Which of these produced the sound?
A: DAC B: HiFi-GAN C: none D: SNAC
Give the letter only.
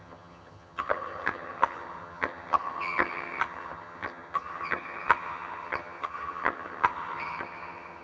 B